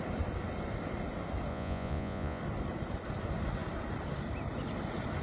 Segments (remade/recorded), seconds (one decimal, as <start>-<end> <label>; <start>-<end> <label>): 0.0-1.5 recorded; 1.5-2.4 remade; 2.4-5.2 recorded